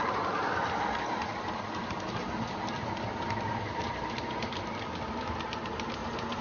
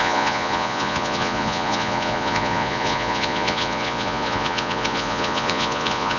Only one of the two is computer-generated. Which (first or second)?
second